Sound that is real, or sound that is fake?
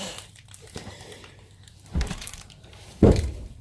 fake